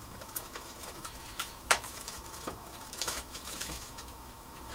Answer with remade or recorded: remade